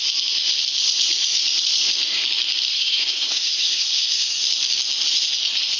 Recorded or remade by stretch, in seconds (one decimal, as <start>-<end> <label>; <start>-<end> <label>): 0.0-2.7 recorded; 2.7-4.4 remade; 4.4-5.8 recorded